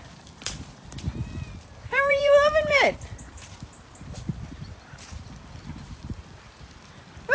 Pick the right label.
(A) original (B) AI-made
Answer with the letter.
B